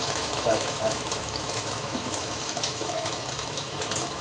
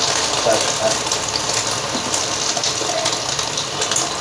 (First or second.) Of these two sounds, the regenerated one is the first